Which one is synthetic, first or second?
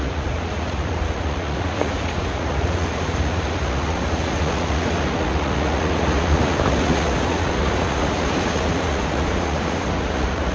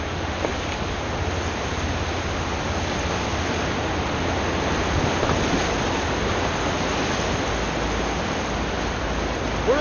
first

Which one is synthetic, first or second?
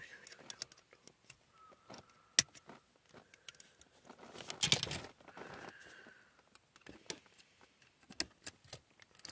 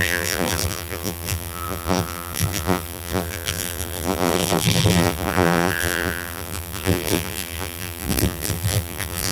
second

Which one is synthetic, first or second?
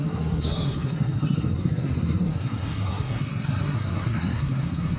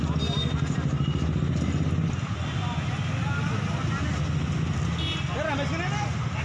first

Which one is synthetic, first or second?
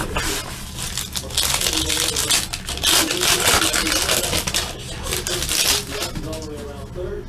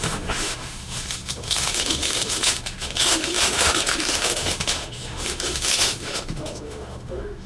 second